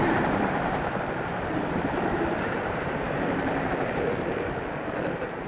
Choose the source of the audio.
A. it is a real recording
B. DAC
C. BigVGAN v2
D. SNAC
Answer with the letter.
C